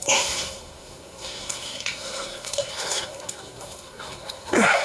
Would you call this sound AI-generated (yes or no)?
yes